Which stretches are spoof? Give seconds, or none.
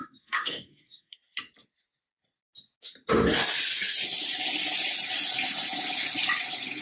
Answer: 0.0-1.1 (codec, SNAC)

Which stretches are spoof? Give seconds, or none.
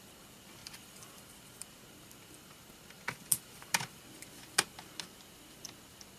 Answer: none